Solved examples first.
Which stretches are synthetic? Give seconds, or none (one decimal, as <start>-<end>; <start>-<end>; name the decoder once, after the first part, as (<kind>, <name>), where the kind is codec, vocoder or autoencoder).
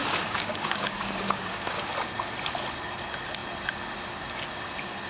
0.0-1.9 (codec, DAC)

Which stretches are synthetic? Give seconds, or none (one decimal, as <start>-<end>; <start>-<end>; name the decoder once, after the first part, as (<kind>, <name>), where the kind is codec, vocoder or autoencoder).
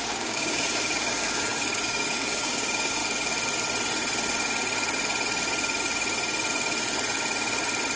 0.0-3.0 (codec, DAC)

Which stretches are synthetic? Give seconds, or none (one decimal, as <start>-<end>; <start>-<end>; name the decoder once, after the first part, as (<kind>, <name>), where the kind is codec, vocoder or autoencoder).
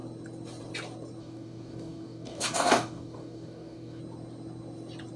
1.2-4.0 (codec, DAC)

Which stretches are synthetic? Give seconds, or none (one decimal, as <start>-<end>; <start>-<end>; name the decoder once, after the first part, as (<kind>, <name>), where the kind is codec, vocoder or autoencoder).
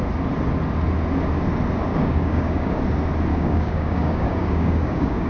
1.9-2.8 (codec, DAC); 3.3-5.3